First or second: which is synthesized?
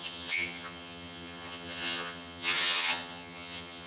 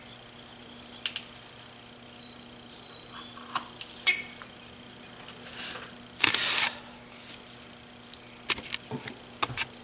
first